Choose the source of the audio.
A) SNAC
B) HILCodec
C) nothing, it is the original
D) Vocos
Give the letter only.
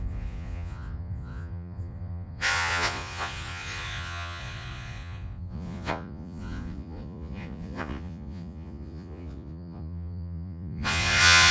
D